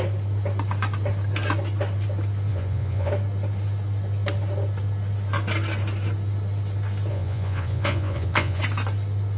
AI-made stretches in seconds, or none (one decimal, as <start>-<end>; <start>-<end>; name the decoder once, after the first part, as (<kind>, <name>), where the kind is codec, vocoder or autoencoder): 2.5-3.1 (vocoder, Vocos); 7.1-8.6